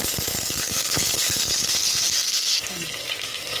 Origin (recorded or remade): remade